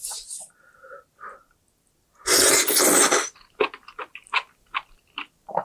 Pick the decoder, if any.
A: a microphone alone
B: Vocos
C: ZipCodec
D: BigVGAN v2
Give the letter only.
A